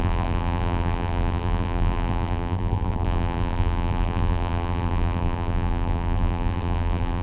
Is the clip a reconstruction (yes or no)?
yes